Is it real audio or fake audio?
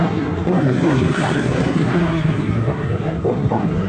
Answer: fake